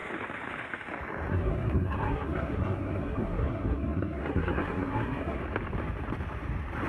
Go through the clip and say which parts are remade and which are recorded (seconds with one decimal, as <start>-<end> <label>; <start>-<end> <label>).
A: 0.0-1.3 recorded; 1.3-5.4 remade; 5.4-6.9 recorded

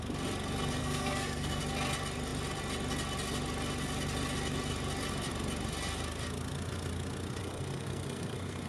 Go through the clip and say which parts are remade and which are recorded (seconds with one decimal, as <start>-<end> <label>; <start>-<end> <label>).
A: 0.0-0.8 recorded; 0.8-1.6 remade; 1.6-7.4 recorded; 7.4-8.7 remade

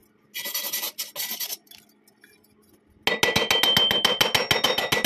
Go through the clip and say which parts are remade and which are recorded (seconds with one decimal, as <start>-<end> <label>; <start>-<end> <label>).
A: 0.0-5.1 recorded

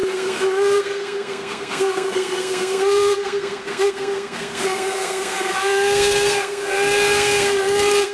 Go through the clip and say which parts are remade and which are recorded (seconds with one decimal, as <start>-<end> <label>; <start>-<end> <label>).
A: 0.0-8.1 remade

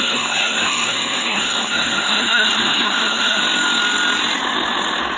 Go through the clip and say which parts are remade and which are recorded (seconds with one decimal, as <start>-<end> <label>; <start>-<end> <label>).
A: 0.0-3.4 remade; 3.4-5.2 recorded

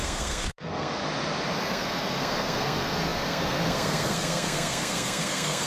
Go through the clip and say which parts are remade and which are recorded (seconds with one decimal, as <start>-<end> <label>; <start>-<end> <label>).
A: 0.0-1.0 remade; 1.0-1.6 recorded; 1.6-5.7 remade

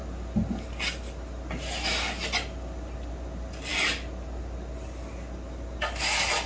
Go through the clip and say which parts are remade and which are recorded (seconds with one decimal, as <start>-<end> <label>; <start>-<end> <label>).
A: 0.0-6.5 recorded